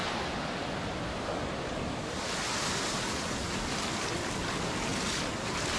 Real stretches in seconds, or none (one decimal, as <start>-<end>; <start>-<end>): 2.4-4.9